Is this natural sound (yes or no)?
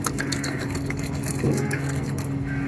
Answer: no